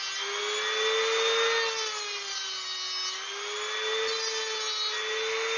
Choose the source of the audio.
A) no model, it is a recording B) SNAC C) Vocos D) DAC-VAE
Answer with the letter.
A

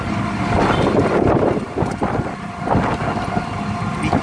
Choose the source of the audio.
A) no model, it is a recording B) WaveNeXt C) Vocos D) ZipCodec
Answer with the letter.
A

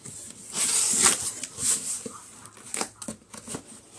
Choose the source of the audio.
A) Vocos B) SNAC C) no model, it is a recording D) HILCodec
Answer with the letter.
C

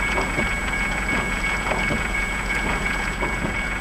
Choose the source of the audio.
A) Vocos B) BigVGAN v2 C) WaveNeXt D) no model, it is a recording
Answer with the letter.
A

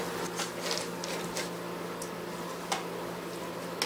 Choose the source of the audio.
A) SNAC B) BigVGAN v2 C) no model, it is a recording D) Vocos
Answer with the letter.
C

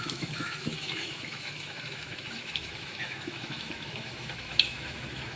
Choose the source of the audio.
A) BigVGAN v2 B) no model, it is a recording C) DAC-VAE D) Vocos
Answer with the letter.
C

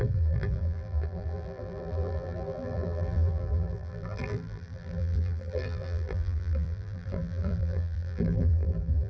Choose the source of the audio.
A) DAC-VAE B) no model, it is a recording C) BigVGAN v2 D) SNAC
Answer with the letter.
C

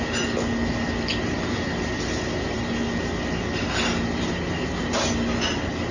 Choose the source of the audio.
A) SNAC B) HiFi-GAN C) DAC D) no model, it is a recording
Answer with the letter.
D